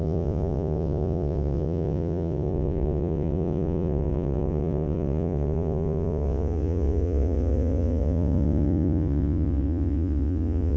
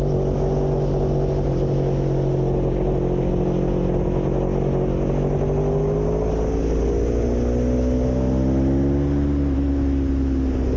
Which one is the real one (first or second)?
second